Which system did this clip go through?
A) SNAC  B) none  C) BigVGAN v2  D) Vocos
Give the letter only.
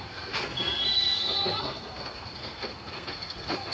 A